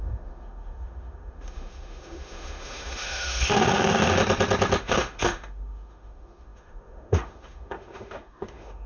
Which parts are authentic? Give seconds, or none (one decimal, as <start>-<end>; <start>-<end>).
4.2-4.8